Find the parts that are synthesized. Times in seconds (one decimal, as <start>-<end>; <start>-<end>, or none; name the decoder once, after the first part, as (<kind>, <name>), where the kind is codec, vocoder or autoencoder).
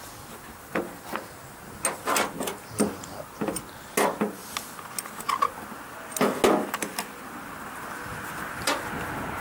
none